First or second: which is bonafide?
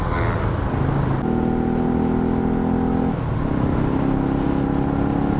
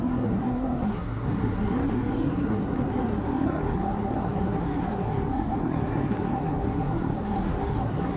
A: first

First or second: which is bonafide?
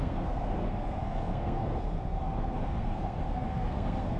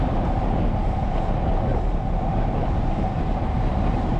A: second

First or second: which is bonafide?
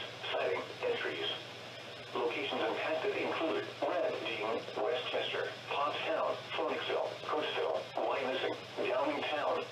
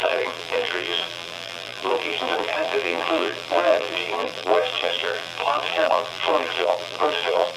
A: first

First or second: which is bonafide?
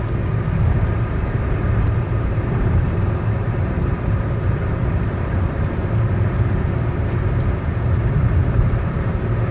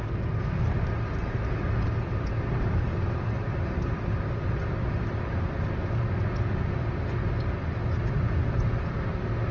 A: second